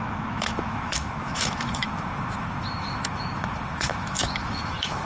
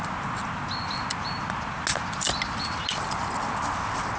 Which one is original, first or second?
second